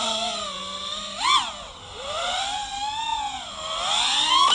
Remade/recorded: recorded